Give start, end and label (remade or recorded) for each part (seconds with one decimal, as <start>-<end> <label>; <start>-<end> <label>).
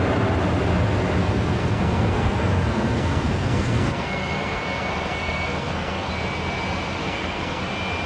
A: 0.0-1.2 recorded; 1.2-6.1 remade; 6.1-7.0 recorded; 7.0-7.6 remade; 7.6-8.1 recorded